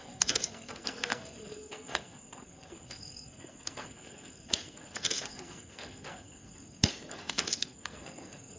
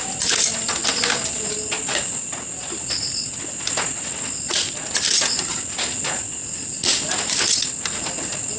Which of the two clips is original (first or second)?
second